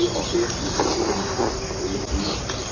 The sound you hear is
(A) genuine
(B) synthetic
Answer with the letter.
B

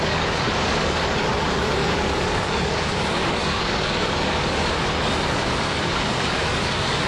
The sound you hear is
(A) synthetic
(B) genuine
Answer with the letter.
A